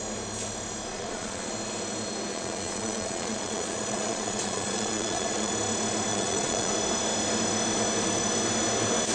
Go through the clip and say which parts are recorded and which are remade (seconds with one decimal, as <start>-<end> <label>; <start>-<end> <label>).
0.0-0.9 recorded; 0.9-1.5 remade; 1.5-2.3 recorded; 2.3-5.5 remade; 5.5-6.1 recorded; 6.1-6.7 remade; 6.7-9.1 recorded